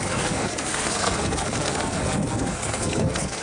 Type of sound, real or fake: fake